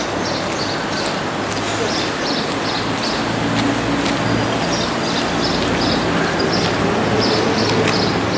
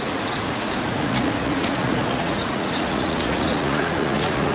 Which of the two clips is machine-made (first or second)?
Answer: second